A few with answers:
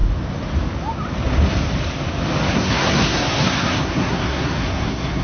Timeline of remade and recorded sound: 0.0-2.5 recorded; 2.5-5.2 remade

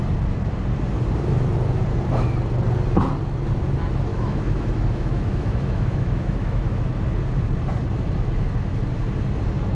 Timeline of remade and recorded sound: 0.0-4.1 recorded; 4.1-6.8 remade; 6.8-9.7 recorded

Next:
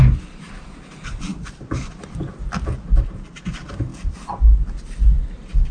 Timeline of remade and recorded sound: 0.0-5.7 recorded

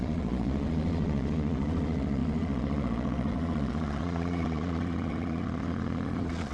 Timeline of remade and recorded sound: 0.0-6.5 remade

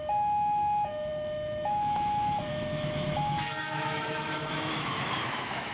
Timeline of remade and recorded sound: 0.0-5.7 remade

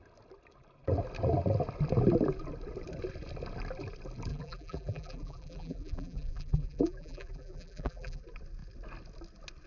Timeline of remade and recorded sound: 0.0-4.3 recorded; 4.3-8.2 remade; 8.2-9.7 recorded

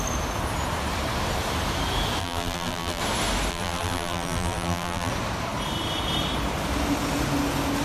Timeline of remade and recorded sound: 0.0-2.2 recorded; 2.2-3.0 remade; 3.0-3.5 recorded; 3.5-5.1 remade; 5.1-7.8 recorded